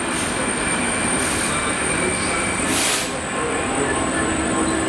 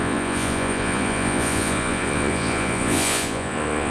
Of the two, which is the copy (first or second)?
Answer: second